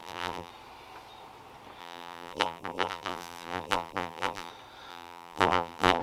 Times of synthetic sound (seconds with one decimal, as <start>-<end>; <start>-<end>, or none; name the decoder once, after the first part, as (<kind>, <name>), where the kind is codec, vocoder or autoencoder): 0.0-0.5 (vocoder, BigVGAN v2); 1.8-4.5; 4.9-6.0